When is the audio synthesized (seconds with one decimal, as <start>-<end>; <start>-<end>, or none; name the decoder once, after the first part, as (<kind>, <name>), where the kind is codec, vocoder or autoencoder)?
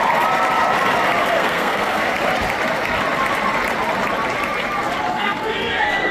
1.2-2.1 (codec, SNAC); 5.1-6.1